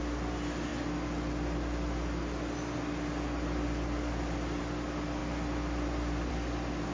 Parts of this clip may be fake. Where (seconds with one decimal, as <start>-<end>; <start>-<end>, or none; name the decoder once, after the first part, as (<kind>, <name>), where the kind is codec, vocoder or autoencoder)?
none